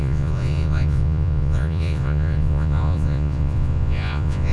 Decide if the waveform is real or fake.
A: fake